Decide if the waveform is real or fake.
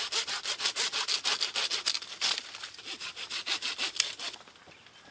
real